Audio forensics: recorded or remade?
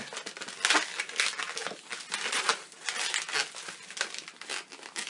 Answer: recorded